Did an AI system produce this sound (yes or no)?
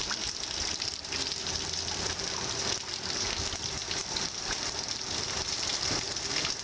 no